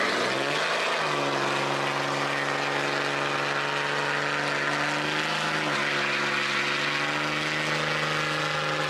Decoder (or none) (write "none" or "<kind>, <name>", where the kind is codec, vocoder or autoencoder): none